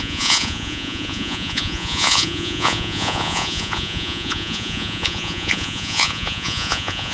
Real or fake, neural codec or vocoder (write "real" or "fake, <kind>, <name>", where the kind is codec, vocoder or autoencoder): fake, vocoder, Vocos